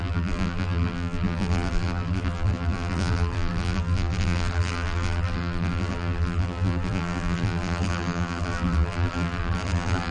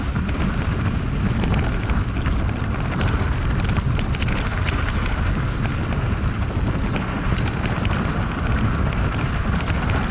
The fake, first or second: first